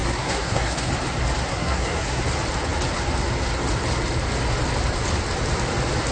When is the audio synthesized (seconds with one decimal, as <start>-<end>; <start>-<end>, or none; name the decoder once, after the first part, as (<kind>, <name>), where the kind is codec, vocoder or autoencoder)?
0.0-0.9 (codec, SNAC); 1.5-2.2